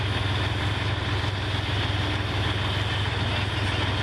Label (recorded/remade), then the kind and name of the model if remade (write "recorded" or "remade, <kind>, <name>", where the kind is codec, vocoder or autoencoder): recorded